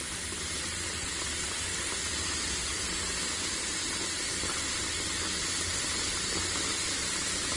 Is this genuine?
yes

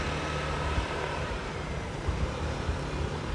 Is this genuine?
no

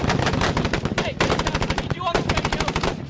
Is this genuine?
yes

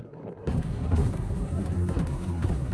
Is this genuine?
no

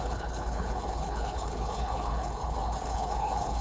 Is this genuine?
no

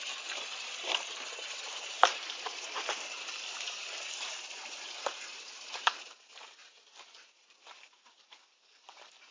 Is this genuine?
no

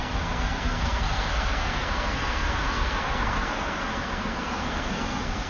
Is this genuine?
no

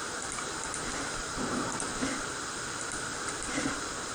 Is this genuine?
no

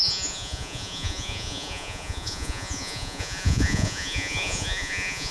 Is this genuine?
no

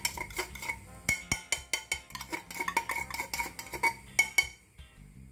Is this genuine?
yes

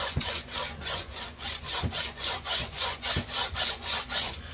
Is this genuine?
no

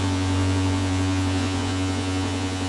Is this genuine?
no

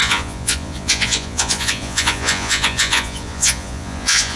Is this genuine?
no